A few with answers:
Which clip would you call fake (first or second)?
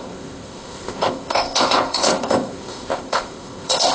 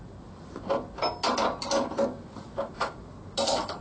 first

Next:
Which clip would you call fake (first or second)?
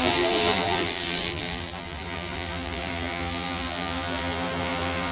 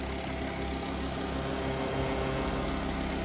first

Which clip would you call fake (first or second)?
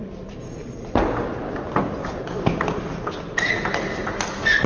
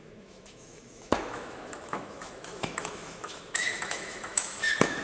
second